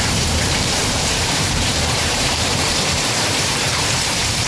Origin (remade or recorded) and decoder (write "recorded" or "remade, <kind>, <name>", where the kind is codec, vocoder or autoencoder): remade, vocoder, BigVGAN v2